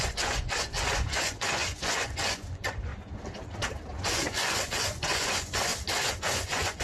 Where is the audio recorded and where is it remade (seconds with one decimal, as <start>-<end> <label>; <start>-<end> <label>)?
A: 0.0-2.9 remade; 2.9-4.0 recorded; 4.0-5.7 remade; 5.7-6.3 recorded; 6.3-6.8 remade